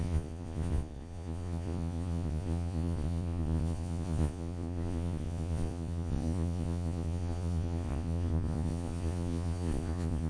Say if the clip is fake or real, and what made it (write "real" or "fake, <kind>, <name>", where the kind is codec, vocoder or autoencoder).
fake, vocoder, Vocos